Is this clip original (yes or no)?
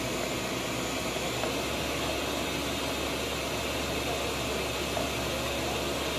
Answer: yes